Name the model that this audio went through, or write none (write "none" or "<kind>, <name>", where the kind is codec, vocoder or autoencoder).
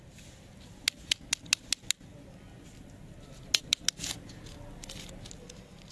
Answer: none